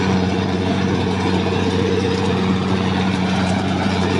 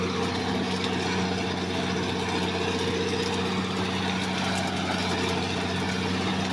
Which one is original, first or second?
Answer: second